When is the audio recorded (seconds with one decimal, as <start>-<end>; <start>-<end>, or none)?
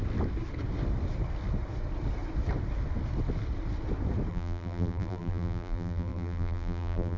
0.0-4.3